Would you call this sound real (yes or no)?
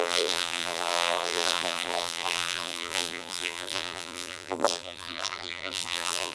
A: no